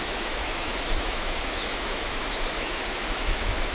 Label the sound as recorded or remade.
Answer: remade